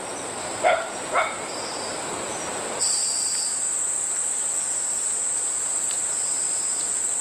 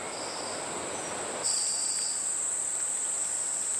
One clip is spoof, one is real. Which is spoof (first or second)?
second